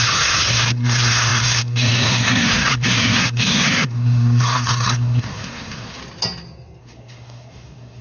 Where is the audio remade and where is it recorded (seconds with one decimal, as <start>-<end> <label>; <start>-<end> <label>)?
0.0-6.0 remade; 6.0-6.8 recorded; 6.8-8.0 remade